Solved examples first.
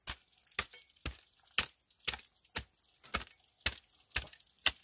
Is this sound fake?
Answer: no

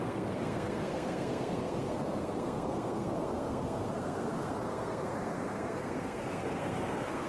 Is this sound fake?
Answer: yes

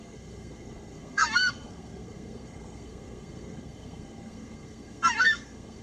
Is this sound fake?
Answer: yes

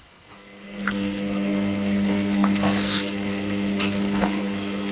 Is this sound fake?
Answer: yes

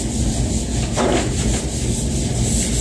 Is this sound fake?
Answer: no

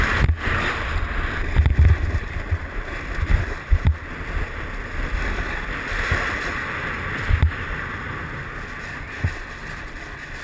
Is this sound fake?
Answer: no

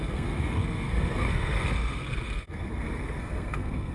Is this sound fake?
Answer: yes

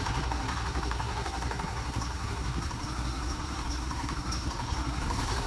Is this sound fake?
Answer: yes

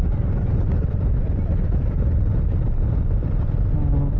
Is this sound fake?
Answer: no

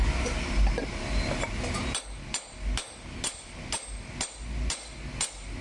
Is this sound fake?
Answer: no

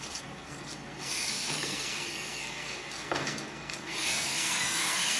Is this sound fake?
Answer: yes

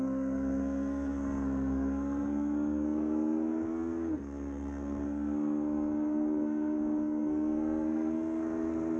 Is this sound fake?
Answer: yes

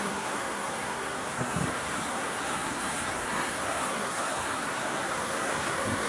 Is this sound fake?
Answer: yes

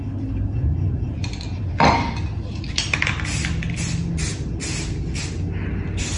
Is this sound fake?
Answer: no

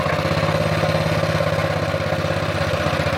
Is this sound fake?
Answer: no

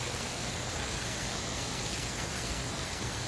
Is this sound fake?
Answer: yes